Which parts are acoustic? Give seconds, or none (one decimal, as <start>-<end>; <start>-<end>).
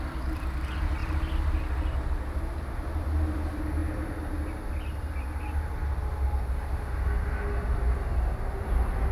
0.0-9.1